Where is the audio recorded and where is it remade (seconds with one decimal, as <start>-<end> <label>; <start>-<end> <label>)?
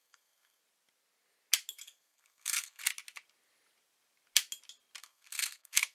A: 0.0-0.6 remade; 0.6-1.7 recorded; 1.7-2.8 remade; 2.8-5.0 recorded; 5.0-5.9 remade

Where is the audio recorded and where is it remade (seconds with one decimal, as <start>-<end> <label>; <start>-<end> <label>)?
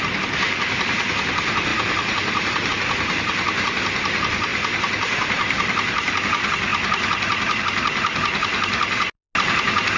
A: 0.0-1.7 recorded; 1.7-2.7 remade; 2.7-4.5 recorded; 4.5-6.2 remade; 6.2-10.0 recorded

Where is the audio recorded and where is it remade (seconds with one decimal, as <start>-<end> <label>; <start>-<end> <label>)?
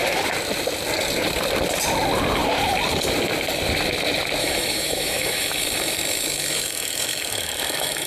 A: 0.0-4.4 recorded; 4.4-8.1 remade